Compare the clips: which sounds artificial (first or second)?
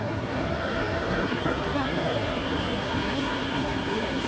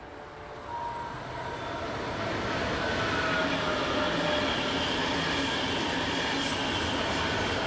first